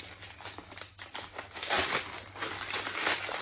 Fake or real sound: real